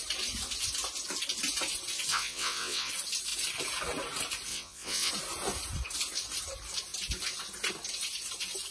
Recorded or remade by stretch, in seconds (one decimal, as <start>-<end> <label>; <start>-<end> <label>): 0.0-2.1 recorded; 2.1-2.9 remade; 2.9-4.5 recorded; 4.5-5.1 remade; 5.1-8.7 recorded